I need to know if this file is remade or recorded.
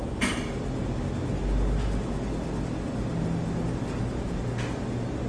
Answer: recorded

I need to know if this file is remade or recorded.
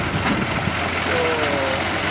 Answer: recorded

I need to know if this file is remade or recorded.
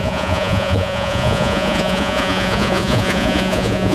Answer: remade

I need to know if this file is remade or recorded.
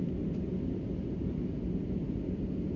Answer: recorded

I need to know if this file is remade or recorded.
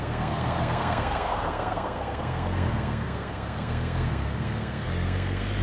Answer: remade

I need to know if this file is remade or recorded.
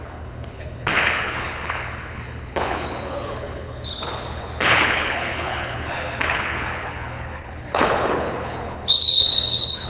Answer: remade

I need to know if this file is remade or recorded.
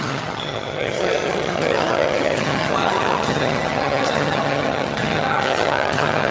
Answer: remade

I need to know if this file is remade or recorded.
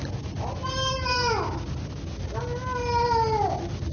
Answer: recorded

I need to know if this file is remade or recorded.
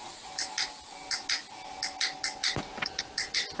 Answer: recorded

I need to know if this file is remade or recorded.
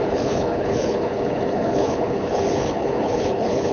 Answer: remade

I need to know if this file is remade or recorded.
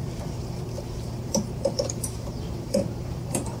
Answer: remade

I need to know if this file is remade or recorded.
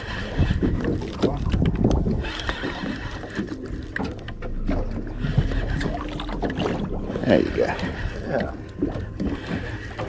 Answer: recorded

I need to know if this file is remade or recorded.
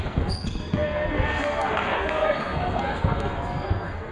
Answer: remade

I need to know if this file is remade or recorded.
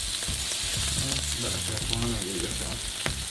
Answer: recorded